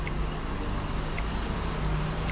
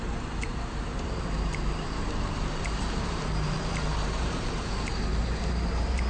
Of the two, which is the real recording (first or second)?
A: first